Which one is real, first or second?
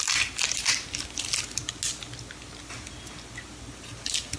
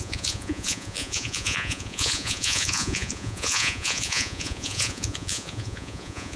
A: first